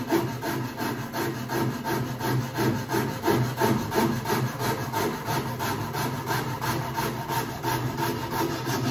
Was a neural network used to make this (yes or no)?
no